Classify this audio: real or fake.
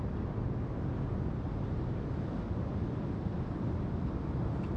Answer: real